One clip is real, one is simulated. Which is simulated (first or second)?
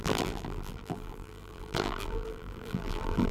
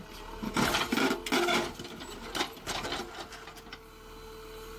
first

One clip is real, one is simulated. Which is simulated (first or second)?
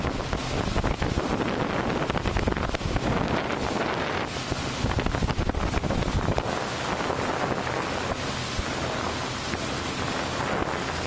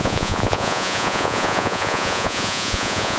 second